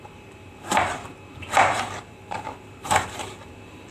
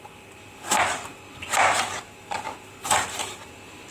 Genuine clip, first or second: second